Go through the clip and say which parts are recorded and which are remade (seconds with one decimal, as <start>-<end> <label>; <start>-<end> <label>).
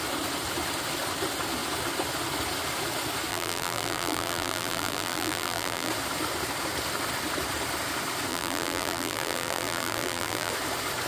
0.0-3.3 recorded; 3.3-5.9 remade; 5.9-8.3 recorded; 8.3-10.5 remade; 10.5-11.1 recorded